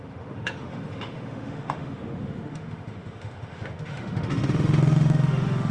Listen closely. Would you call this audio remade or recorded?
remade